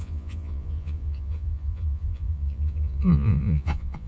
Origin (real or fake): fake